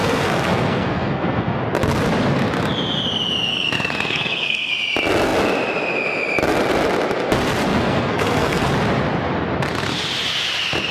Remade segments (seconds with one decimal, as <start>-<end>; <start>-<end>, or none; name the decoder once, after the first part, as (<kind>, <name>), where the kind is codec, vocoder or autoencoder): 0.0-1.6 (codec, SNAC); 3.5-4.7; 7.7-8.7

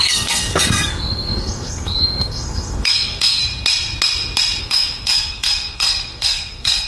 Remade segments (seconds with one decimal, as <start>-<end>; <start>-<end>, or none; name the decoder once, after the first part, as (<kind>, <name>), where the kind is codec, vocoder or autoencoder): 0.0-3.4 (codec, SNAC); 4.6-6.9

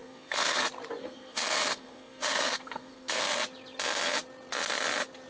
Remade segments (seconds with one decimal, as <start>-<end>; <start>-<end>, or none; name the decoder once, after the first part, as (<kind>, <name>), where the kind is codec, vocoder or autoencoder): 0.0-0.6 (codec, SNAC); 1.0-3.2

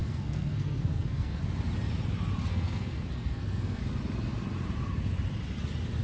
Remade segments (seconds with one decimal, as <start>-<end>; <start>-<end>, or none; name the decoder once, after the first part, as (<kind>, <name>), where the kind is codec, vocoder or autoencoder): 0.0-1.4 (codec, SNAC); 2.5-3.8

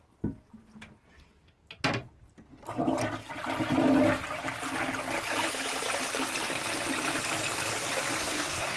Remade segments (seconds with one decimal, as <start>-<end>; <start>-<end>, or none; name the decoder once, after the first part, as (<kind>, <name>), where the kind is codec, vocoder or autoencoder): 8.2-8.8 (codec, SNAC)